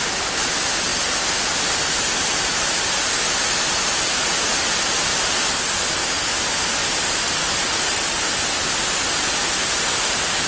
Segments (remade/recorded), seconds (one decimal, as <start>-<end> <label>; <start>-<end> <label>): 0.0-5.1 recorded; 5.1-5.8 remade; 5.8-6.8 recorded; 6.8-8.2 remade; 8.2-10.5 recorded

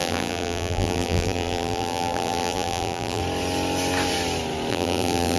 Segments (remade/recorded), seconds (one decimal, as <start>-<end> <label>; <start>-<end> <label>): 0.0-3.2 remade; 3.2-4.7 recorded; 4.7-5.4 remade

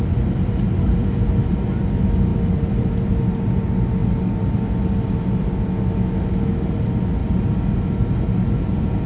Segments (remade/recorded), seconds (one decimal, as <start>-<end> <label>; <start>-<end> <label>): 0.0-2.3 recorded; 2.3-3.1 remade; 3.1-9.1 recorded

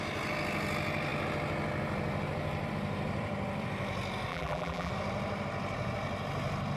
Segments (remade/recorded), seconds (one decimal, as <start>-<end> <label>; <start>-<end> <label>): 0.0-4.3 recorded; 4.3-4.9 remade; 4.9-6.8 recorded